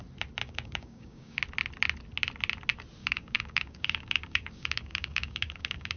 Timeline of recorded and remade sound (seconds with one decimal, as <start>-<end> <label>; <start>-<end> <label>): 0.0-0.4 recorded; 0.4-1.4 remade; 1.4-3.0 recorded; 3.0-6.0 remade